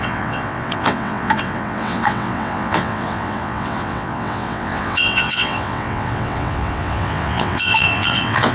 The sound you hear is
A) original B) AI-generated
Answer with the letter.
B